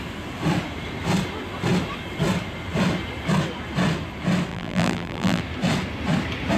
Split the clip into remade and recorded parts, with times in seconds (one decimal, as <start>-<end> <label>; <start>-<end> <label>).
0.0-4.5 recorded; 4.5-5.4 remade; 5.4-6.6 recorded